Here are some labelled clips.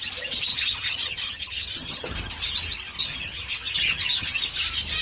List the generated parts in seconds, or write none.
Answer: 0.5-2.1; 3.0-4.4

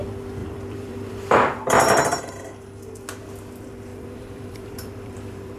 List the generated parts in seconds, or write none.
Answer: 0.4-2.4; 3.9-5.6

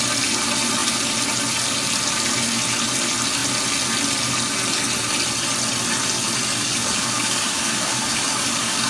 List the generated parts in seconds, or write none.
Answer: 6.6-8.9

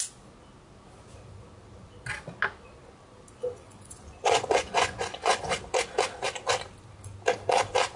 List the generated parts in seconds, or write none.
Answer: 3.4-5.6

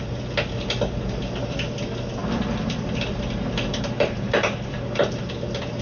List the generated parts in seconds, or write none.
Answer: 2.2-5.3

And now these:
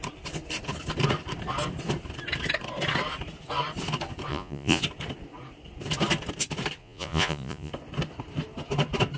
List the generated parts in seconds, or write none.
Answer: 4.3-4.8; 6.8-7.7

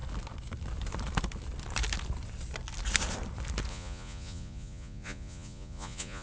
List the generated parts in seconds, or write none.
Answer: 3.7-6.2

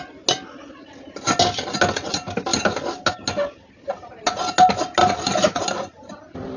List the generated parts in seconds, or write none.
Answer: none